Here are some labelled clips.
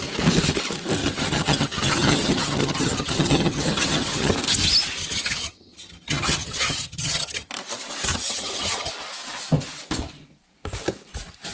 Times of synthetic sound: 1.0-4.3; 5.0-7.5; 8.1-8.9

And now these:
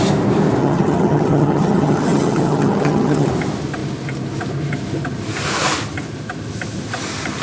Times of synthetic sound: 0.6-3.3